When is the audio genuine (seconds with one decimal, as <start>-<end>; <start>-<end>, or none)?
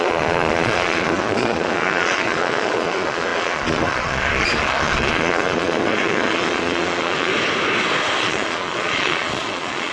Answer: 7.3-8.2